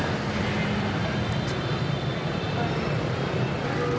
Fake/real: real